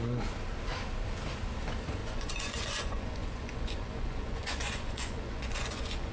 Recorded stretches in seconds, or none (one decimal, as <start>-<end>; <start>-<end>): 0.0-2.0